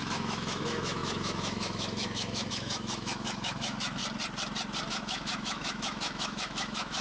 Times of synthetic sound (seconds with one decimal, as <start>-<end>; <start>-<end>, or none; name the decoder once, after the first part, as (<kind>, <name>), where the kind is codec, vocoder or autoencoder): 0.0-4.0 (autoencoder, DAC-VAE); 4.9-7.0